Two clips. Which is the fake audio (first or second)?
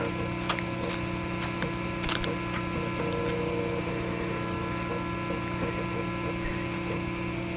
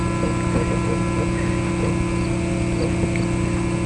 first